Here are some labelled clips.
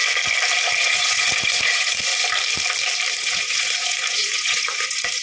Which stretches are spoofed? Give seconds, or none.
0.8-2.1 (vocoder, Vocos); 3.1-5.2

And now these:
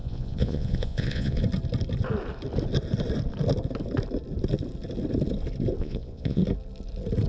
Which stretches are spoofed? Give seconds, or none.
0.0-1.4 (vocoder, Vocos); 5.8-6.4

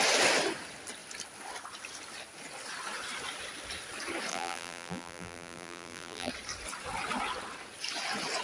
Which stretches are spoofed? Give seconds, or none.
4.3-6.3 (vocoder, BigVGAN v2)